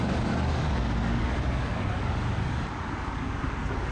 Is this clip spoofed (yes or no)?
yes